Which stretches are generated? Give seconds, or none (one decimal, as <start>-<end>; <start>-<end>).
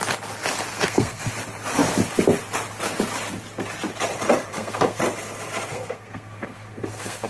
0.7-1.3; 4.5-5.0; 5.7-7.3